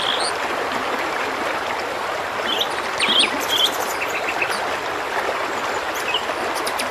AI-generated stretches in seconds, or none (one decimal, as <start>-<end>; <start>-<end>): none